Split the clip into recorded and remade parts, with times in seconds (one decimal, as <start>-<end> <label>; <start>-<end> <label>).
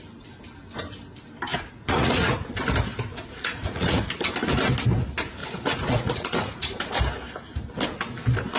0.0-1.5 recorded; 1.5-2.5 remade; 2.5-3.1 recorded; 3.1-4.0 remade; 4.0-5.4 recorded; 5.4-6.8 remade; 6.8-8.6 recorded